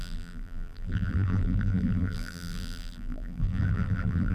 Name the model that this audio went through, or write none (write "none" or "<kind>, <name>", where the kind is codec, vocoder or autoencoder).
vocoder, BigVGAN v2